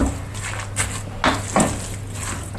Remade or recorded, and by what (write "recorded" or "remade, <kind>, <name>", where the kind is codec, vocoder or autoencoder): recorded